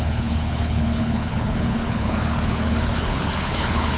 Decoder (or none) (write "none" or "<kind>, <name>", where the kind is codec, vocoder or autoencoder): codec, HILCodec